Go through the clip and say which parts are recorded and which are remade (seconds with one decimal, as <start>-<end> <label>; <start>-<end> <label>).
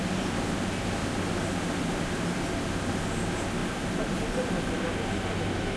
0.0-3.6 recorded; 3.6-4.5 remade; 4.5-5.8 recorded